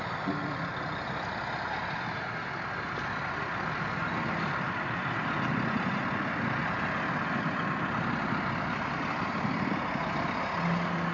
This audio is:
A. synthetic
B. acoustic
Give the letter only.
B